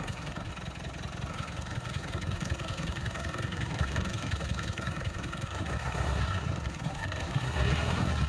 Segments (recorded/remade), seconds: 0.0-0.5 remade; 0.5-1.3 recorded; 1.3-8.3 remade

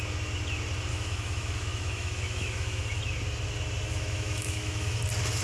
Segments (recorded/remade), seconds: 0.0-0.9 recorded; 0.9-3.0 remade; 3.0-3.9 recorded; 3.9-5.0 remade; 5.0-5.4 recorded

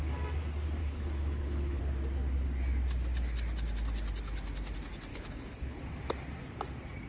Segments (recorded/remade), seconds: 0.0-0.8 recorded; 0.8-1.8 remade; 1.8-5.1 recorded; 5.1-5.8 remade; 5.8-7.1 recorded

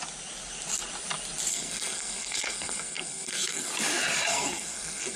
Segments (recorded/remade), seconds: 0.0-1.5 recorded; 1.5-3.7 remade; 3.7-4.3 recorded; 4.3-5.2 remade

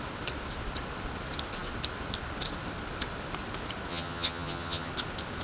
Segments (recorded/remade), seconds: 0.0-3.9 recorded; 3.9-4.9 remade; 4.9-5.4 recorded

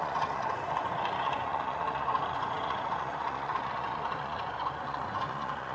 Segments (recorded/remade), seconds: 0.0-5.7 remade

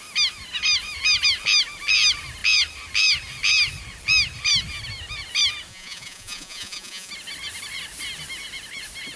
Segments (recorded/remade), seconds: 0.0-5.7 recorded; 5.7-7.1 remade; 7.1-9.2 recorded

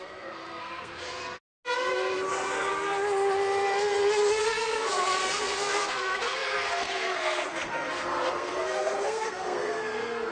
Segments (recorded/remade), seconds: 0.0-1.2 remade; 1.2-2.3 recorded; 2.3-2.7 remade; 2.7-4.4 recorded; 4.4-10.3 remade